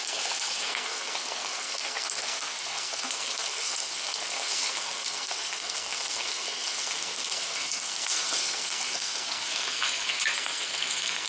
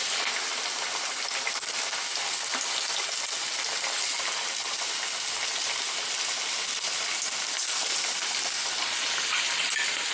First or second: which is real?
second